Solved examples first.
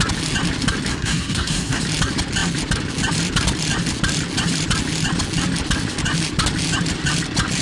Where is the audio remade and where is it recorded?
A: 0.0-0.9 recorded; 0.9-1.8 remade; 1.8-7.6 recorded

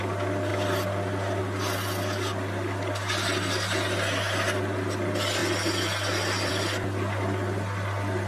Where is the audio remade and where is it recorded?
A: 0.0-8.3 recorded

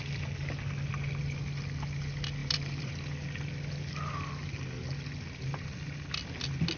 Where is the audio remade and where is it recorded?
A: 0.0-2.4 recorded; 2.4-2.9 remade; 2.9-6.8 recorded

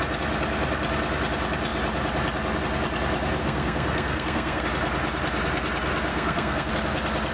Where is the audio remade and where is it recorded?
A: 0.0-3.4 recorded; 3.4-4.6 remade; 4.6-6.1 recorded; 6.1-6.7 remade; 6.7-7.3 recorded